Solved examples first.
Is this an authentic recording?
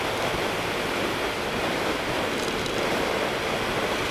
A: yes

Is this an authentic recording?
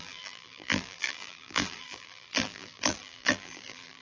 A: no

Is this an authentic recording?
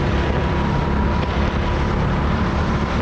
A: no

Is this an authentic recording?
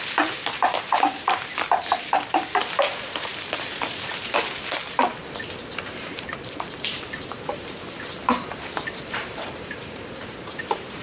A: no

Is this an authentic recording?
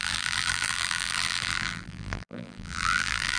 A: no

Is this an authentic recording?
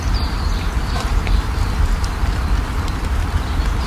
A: no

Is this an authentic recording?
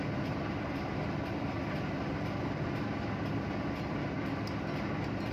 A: yes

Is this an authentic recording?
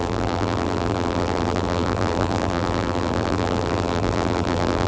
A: no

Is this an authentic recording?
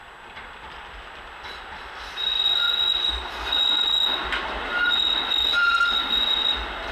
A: yes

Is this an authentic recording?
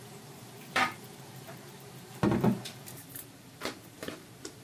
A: no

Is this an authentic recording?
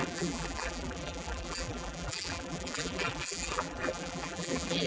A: no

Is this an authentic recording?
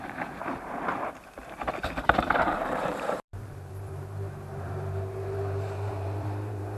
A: no